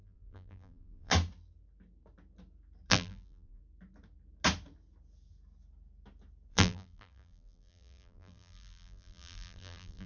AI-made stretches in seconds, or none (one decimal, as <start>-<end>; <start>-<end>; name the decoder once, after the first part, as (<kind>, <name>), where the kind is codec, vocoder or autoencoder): 0.0-1.1 (vocoder, BigVGAN v2); 2.9-3.6; 6.5-10.1

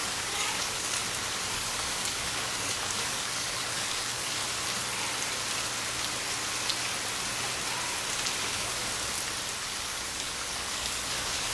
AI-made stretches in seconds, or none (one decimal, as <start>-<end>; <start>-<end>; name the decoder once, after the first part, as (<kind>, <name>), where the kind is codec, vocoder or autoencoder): 0.0-1.0 (codec, DAC); 1.5-4.4; 8.4-8.8; 9.6-11.5

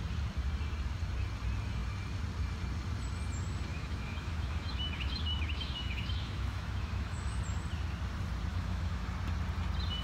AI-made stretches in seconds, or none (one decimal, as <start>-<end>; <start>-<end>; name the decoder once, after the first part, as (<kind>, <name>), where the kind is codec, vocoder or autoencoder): 3.7-7.4 (autoencoder, DAC-VAE); 8.5-9.1

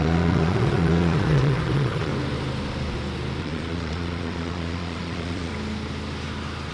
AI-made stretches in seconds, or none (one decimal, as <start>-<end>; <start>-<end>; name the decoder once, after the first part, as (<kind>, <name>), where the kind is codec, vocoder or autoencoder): 0.0-2.1 (vocoder, Vocos); 3.4-5.5

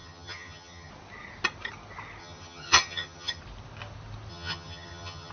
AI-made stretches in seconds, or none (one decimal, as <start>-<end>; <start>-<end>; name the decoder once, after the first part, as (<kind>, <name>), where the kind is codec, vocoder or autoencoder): 0.0-0.9 (vocoder, HiFi-GAN); 2.2-3.4; 4.3-5.3

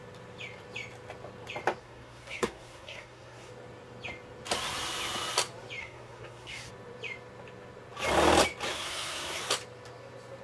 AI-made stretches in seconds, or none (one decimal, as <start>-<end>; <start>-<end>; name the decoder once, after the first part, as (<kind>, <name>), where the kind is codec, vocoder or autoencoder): 1.8-3.5 (codec, SNAC); 5.8-6.7; 8.7-9.4

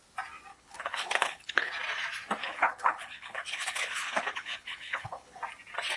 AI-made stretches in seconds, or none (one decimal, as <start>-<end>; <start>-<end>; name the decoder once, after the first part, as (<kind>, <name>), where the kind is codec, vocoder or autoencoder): 0.5-1.7 (codec, HILCodec); 2.4-5.4

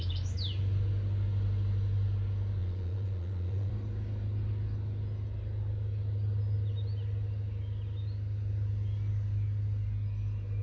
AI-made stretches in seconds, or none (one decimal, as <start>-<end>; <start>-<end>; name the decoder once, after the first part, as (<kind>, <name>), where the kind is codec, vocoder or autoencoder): 2.6-3.7 (vocoder, Vocos)